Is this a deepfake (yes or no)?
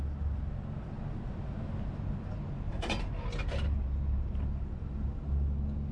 no